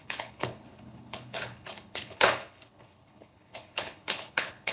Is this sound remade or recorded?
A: remade